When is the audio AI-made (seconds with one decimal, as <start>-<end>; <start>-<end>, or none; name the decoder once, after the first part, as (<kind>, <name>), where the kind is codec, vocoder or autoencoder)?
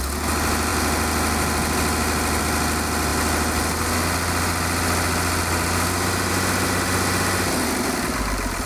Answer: none